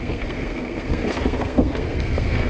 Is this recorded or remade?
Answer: remade